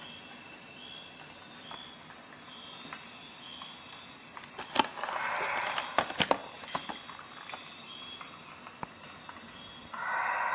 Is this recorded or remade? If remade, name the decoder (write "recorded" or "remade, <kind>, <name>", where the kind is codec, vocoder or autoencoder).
recorded